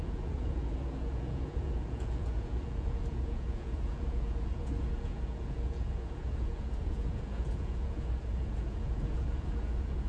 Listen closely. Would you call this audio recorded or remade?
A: remade